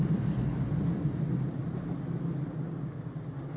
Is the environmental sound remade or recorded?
recorded